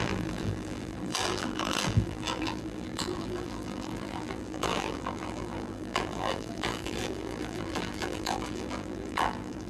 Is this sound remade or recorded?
remade